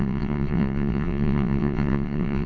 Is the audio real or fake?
fake